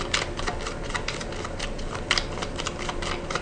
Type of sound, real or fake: real